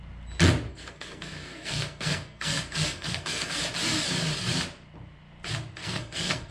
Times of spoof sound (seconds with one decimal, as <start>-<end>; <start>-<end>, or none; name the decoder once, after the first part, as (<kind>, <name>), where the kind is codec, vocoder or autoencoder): 0.7-3.6 (codec, SNAC); 5.8-6.5